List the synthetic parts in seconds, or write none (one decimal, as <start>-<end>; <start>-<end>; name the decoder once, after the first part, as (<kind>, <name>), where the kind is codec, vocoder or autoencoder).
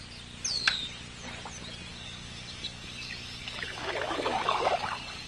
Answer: 1.9-5.3 (codec, DAC)